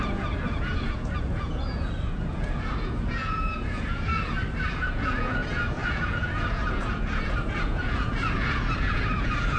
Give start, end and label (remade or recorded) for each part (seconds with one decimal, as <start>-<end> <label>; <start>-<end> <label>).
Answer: 0.0-4.1 remade; 4.1-4.7 recorded; 4.7-9.6 remade